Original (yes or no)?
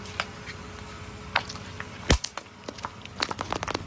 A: yes